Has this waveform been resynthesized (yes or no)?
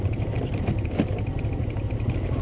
no